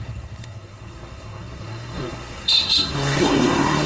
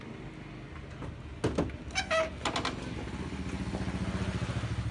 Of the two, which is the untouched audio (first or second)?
second